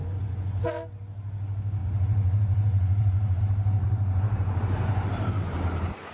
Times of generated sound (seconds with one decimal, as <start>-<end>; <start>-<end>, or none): 0.0-0.6; 1.8-3.4; 3.8-5.1